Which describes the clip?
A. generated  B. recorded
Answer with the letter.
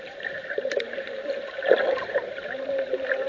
A